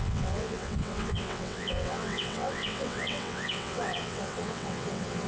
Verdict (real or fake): fake